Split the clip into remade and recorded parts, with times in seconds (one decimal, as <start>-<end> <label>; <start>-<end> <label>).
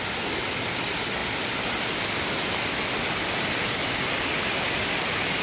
0.0-5.4 recorded